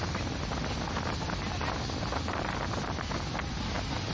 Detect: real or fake real